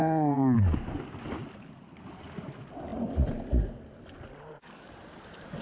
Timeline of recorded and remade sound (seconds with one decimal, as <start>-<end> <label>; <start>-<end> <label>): 0.0-0.6 remade; 0.6-5.6 recorded